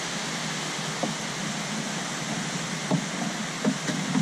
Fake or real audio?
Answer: real